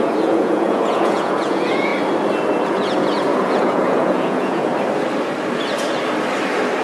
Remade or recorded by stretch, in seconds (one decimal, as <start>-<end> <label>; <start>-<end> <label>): 0.0-1.9 remade; 1.9-2.7 recorded; 2.7-4.7 remade; 4.7-6.8 recorded